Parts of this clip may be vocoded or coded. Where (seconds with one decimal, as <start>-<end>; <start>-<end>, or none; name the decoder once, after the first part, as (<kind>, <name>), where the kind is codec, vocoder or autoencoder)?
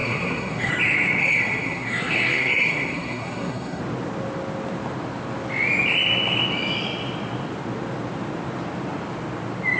0.0-0.7 (codec, SNAC); 1.2-3.8